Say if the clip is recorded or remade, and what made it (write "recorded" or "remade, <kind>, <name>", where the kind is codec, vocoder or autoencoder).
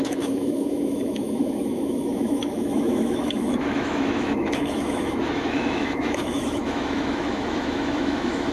remade, autoencoder, DAC-VAE